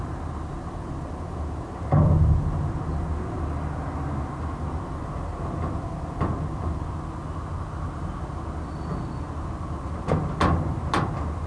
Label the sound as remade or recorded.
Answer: recorded